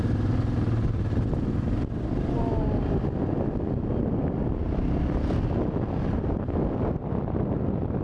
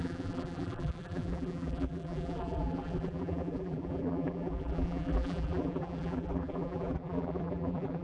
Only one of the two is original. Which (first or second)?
first